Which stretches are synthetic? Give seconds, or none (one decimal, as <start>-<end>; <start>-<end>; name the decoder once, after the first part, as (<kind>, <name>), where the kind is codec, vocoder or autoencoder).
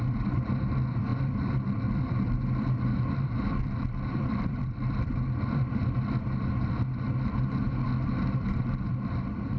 0.0-9.6 (vocoder, BigVGAN v2)